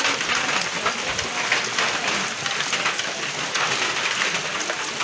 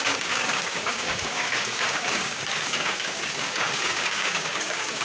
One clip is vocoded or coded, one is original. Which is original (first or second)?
first